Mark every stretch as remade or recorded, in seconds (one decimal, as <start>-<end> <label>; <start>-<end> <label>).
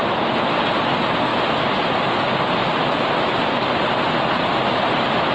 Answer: 0.0-5.3 recorded